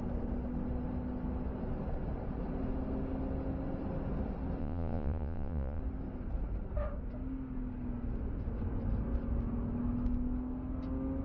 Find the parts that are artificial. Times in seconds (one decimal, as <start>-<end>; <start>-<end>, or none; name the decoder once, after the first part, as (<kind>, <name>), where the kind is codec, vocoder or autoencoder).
4.6-5.8 (vocoder, Vocos)